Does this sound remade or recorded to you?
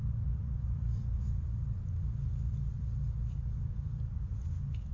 remade